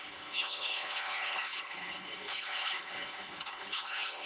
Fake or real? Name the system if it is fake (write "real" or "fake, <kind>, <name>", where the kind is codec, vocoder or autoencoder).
fake, codec, HILCodec